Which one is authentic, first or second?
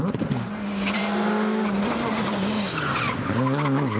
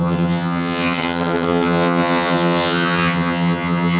first